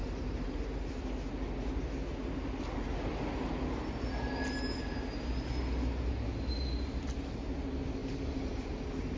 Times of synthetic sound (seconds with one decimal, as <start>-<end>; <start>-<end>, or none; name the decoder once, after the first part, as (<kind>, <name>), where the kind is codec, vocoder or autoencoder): 0.0-1.0 (vocoder, BigVGAN v2); 8.0-9.2